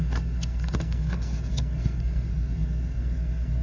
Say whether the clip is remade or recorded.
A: remade